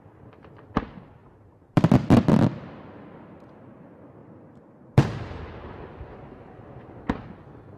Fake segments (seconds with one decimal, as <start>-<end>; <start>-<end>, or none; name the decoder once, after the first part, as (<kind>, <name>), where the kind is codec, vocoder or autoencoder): 1.2-1.8 (vocoder, BigVGAN v2); 4.2-7.0